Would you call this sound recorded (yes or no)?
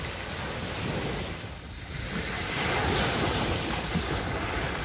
yes